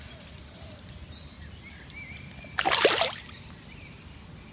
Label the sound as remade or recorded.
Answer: recorded